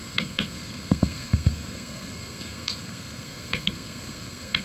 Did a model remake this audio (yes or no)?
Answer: yes